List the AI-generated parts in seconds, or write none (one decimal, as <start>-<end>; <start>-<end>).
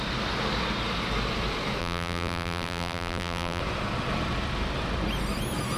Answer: 1.8-3.6